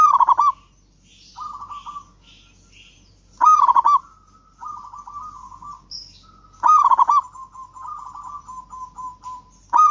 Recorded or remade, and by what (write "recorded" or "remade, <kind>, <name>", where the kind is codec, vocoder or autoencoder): recorded